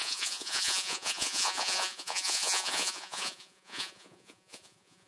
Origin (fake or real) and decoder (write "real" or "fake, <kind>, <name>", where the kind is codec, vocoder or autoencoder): fake, vocoder, Vocos